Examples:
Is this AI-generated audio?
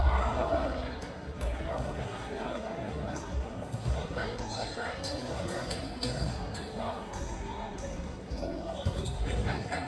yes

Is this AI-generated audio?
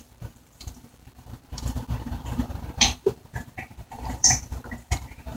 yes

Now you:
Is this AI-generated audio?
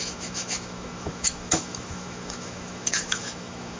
yes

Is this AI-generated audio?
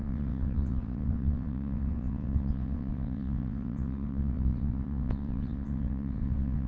yes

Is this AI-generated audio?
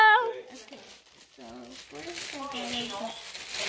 no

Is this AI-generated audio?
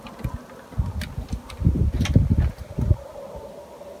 no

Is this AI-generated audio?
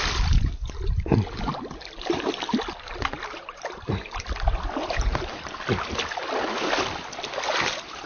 no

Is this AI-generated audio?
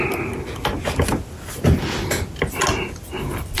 no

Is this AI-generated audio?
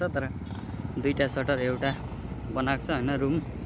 no